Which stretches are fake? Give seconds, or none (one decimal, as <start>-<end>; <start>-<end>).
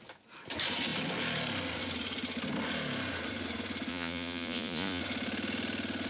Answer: 3.9-5.0